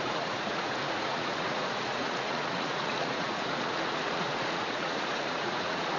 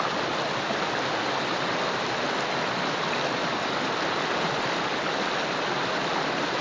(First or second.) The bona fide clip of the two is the second